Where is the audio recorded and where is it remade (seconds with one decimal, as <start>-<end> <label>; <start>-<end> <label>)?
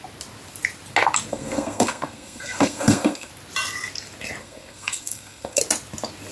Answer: 0.0-1.3 recorded; 1.3-3.3 remade; 3.3-4.4 recorded; 4.4-5.6 remade; 5.6-6.3 recorded